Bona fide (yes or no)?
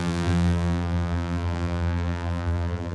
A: no